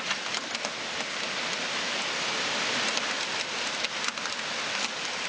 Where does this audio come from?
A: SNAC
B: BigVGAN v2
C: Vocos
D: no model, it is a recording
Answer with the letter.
D